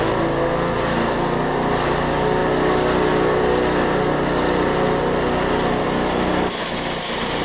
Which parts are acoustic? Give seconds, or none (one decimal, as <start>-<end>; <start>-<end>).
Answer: 0.0-7.4